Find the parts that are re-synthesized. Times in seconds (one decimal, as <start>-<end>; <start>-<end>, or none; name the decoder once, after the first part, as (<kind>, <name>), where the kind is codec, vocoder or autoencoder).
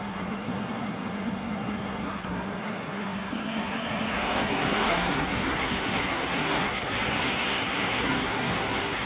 0.0-9.1 (codec, SNAC)